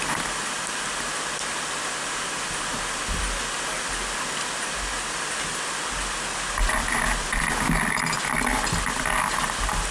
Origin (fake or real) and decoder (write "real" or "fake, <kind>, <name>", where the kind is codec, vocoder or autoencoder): real